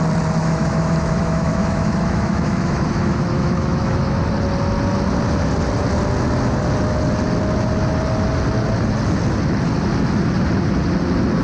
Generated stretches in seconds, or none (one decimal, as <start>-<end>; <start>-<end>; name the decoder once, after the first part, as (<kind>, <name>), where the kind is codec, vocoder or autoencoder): 0.4-4.2 (autoencoder, DAC-VAE)